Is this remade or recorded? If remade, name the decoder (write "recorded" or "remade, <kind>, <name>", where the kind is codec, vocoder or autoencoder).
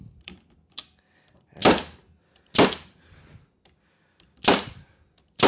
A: remade, vocoder, BigVGAN v2